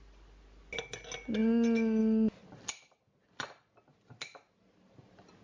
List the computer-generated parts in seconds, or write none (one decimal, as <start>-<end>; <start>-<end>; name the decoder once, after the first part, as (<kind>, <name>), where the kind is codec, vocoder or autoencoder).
none